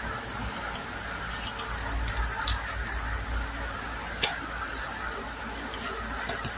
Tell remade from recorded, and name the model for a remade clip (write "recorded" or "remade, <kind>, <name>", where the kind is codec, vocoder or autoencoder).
recorded